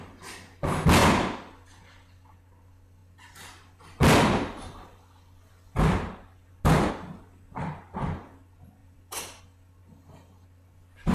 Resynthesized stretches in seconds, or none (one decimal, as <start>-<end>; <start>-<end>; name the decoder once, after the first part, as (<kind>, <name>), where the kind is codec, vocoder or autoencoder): 8.8-9.4 (vocoder, BigVGAN v2)